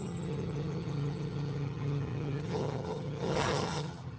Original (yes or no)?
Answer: no